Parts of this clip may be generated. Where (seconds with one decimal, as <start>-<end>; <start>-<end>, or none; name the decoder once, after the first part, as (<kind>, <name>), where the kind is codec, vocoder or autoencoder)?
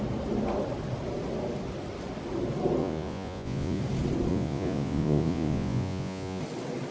2.8-3.8 (vocoder, Vocos); 4.3-6.4